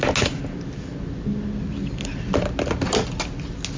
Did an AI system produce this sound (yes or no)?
no